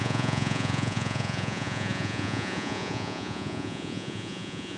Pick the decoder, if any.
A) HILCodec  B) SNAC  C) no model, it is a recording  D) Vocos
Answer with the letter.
D